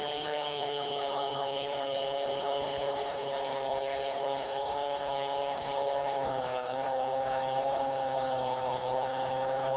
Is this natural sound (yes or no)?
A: no